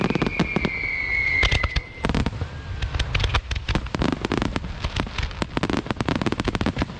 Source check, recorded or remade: recorded